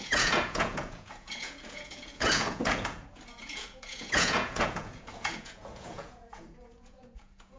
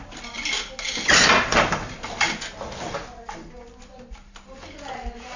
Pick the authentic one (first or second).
second